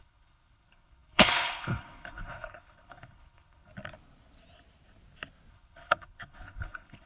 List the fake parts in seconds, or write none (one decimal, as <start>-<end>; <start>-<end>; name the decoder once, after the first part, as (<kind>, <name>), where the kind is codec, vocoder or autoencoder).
0.0-3.7 (codec, HILCodec); 5.5-7.1